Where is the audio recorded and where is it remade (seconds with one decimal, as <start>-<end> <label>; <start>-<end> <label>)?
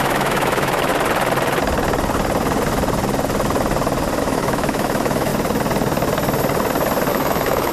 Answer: 0.0-0.9 remade; 0.9-4.2 recorded; 4.2-5.3 remade; 5.3-7.1 recorded; 7.1-7.7 remade